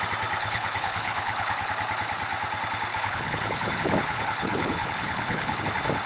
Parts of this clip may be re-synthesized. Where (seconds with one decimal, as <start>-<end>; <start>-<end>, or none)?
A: 0.4-1.7; 2.9-5.6